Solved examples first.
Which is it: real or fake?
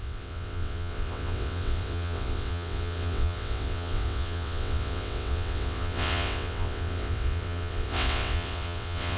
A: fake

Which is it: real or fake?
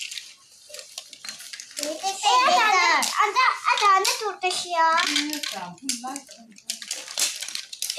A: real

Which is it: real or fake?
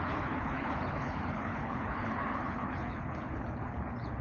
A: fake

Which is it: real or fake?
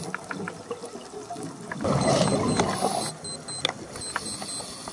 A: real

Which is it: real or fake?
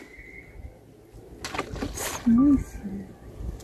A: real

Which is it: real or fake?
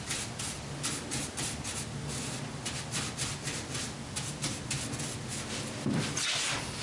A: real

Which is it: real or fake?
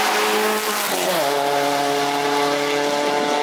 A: real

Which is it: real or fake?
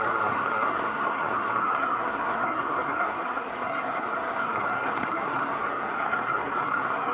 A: fake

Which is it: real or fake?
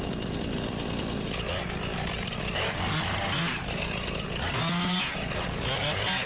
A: real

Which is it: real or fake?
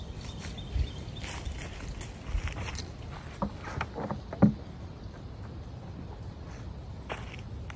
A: real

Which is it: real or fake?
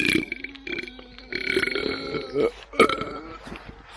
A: real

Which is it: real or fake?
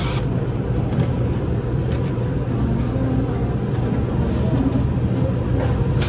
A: real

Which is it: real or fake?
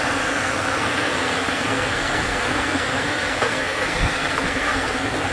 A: fake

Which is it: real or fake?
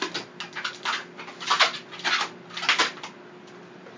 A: real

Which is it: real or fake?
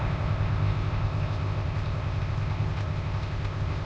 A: fake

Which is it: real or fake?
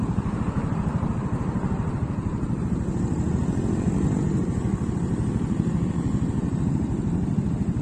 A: fake